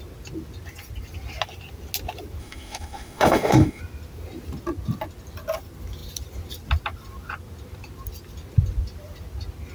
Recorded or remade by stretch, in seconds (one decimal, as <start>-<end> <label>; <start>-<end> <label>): 0.0-2.4 recorded; 2.4-3.8 remade; 3.8-9.7 recorded